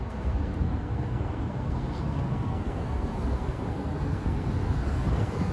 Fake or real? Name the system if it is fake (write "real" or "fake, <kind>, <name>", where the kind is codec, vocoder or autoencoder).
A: fake, codec, SNAC